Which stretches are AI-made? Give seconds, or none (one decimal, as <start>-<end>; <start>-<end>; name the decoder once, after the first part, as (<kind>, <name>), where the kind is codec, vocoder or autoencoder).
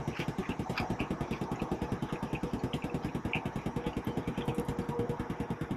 none